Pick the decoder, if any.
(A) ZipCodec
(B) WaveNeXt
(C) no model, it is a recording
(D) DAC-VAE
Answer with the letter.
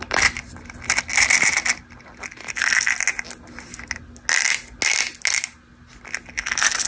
C